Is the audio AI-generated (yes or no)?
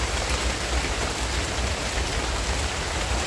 no